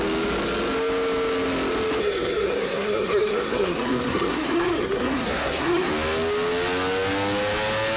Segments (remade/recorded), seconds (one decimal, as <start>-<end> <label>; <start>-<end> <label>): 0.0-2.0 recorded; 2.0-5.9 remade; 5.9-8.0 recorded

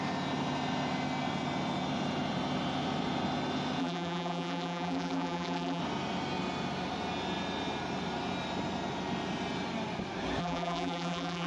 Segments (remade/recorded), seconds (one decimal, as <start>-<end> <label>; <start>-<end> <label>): 0.0-3.8 recorded; 3.8-5.8 remade; 5.8-10.4 recorded; 10.4-11.5 remade

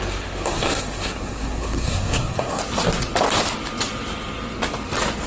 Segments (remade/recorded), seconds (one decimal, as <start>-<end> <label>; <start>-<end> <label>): 0.0-2.6 remade; 2.6-5.3 recorded

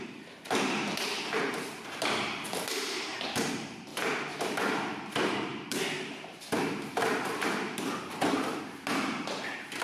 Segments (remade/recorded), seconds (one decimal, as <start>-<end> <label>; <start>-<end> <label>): 0.0-3.9 remade; 3.9-4.4 recorded; 4.4-9.8 remade

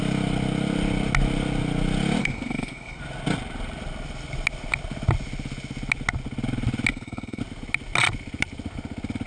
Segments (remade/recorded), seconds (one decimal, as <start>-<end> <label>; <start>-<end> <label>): 0.0-2.2 recorded; 2.2-3.0 remade; 3.0-6.9 recorded; 6.9-7.4 remade; 7.4-9.3 recorded

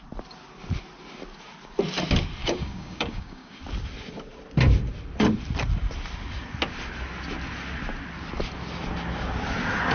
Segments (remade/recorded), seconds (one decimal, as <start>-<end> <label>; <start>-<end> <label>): 0.0-2.4 recorded; 2.4-3.6 remade; 3.6-9.9 recorded

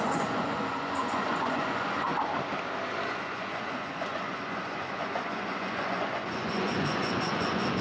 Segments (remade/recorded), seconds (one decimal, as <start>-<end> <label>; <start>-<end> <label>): 0.0-2.1 remade; 2.1-3.1 recorded; 3.1-7.8 remade

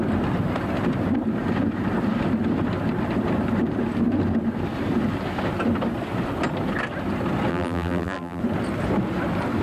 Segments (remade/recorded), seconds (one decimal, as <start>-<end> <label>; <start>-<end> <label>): 0.0-7.5 recorded; 7.5-8.4 remade; 8.4-9.6 recorded